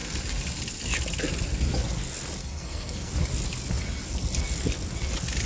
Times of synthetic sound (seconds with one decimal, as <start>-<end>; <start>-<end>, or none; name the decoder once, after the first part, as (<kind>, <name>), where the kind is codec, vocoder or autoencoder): 2.4-3.1 (codec, SNAC)